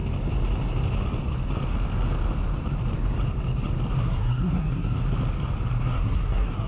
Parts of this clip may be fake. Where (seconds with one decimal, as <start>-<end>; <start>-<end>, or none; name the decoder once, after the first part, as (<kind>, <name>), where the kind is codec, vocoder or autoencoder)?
4.0-5.0 (codec, SNAC); 5.8-6.7